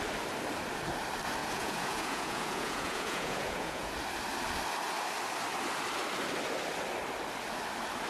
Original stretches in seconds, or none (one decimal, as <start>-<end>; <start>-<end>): 0.0-1.4; 3.9-8.1